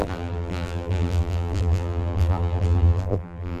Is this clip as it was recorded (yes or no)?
no